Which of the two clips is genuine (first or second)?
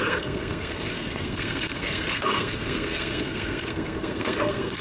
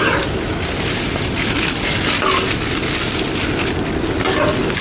second